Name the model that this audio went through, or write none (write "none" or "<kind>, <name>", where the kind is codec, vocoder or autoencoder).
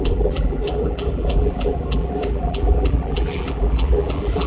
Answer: vocoder, BigVGAN v2